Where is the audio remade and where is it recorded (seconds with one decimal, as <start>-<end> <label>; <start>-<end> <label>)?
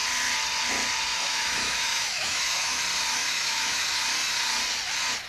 0.0-1.1 recorded; 1.1-2.8 remade; 2.8-3.2 recorded; 3.2-4.0 remade; 4.0-5.3 recorded